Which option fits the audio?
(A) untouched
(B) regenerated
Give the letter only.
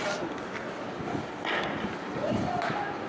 A